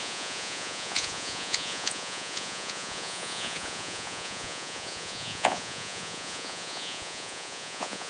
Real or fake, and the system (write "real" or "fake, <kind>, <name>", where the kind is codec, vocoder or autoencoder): fake, vocoder, Vocos